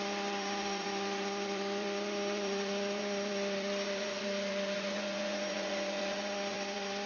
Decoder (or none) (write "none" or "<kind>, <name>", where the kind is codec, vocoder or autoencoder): vocoder, Vocos